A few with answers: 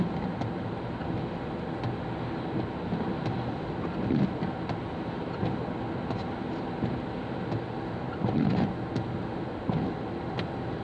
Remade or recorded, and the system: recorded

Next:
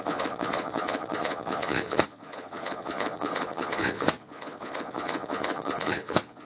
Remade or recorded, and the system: remade, vocoder, Vocos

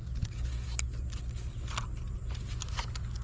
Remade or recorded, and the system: recorded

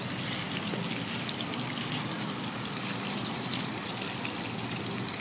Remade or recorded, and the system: recorded